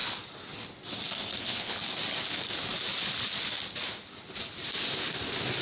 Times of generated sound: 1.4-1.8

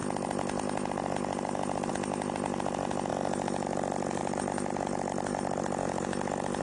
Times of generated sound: none

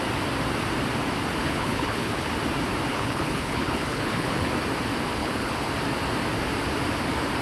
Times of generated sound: 1.4-2.3; 2.9-4.5; 5.2-5.7

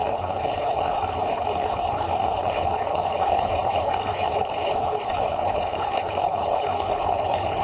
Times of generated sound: 0.0-7.6

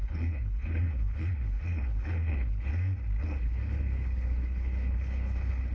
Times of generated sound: 0.0-2.7; 3.2-5.7

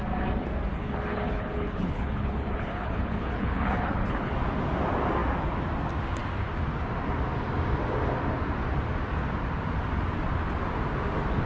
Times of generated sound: 0.7-4.3

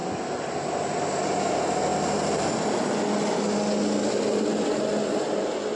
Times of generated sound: none

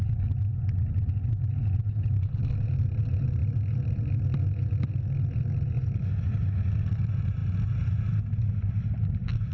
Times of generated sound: none